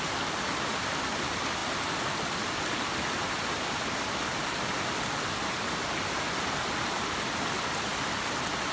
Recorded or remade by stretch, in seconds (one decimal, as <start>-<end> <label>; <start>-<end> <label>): 0.0-8.7 recorded